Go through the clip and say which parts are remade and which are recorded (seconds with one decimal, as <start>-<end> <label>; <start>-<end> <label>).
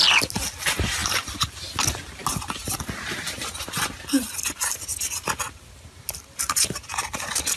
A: 0.0-7.6 recorded